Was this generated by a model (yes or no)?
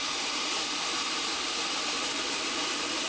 yes